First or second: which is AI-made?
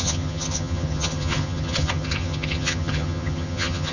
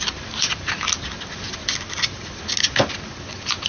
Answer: first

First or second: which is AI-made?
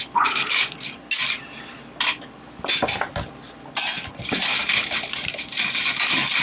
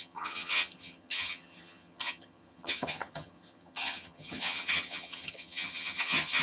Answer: second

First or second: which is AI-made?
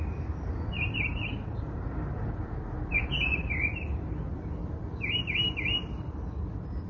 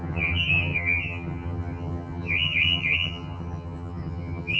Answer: second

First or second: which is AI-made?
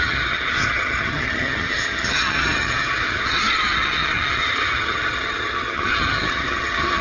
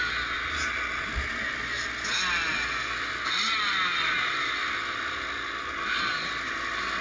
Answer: first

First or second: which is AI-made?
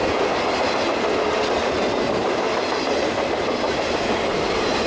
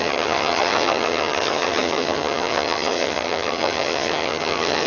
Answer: second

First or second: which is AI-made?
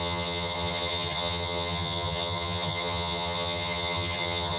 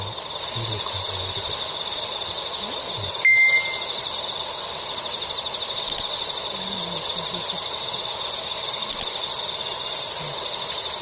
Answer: first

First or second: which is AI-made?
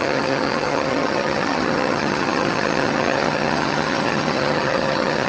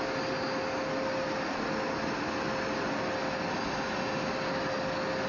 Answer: first